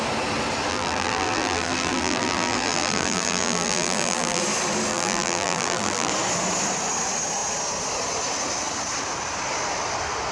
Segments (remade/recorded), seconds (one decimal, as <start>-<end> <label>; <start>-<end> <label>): 0.0-0.7 recorded; 0.7-4.4 remade; 4.4-4.9 recorded; 4.9-6.1 remade; 6.1-10.3 recorded